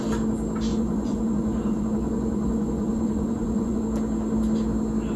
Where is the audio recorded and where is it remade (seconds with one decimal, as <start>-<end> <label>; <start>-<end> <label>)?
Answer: 0.0-0.7 recorded; 0.7-3.8 remade; 3.8-5.2 recorded